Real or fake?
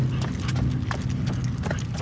real